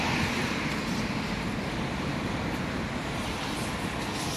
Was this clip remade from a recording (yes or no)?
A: no